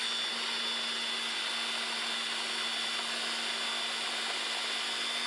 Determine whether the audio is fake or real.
real